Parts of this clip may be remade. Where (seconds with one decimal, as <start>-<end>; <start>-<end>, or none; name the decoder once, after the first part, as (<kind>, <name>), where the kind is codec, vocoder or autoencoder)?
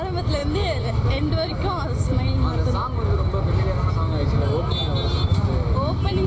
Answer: none